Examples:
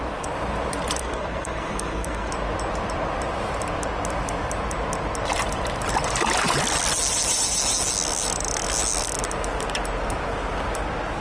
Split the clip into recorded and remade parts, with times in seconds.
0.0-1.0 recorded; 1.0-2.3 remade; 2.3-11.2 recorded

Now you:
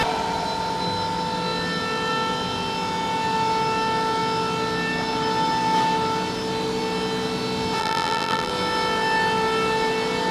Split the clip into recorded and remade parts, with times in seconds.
0.0-7.8 recorded; 7.8-8.5 remade; 8.5-10.3 recorded

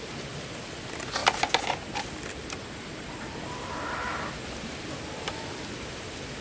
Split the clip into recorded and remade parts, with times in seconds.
0.0-6.4 recorded

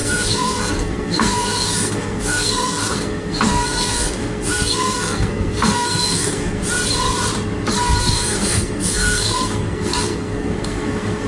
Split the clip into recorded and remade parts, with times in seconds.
0.0-6.6 remade; 6.6-8.0 recorded; 8.0-11.3 remade

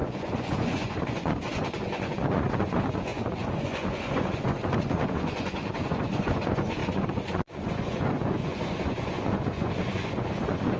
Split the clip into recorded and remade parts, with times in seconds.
0.0-10.8 remade